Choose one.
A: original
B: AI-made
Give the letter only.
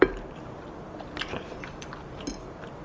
A